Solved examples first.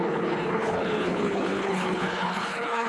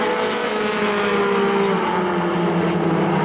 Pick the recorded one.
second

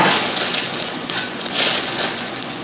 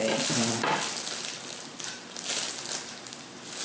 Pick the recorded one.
second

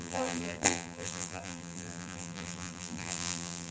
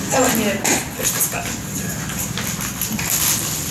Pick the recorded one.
second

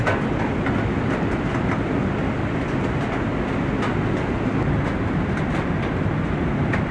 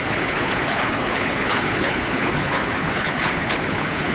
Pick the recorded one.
first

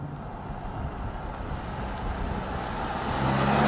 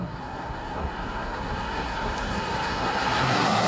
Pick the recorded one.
first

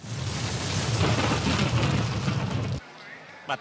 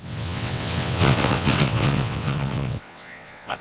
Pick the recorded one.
first